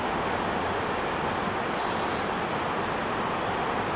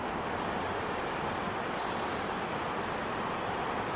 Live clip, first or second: first